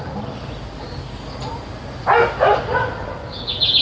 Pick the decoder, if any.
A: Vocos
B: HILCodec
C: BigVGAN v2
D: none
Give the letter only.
D